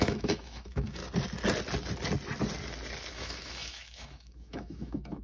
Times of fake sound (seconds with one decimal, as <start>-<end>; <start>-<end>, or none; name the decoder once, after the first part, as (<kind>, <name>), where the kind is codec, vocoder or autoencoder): 0.0-1.0 (autoencoder, DAC-VAE); 3.1-5.2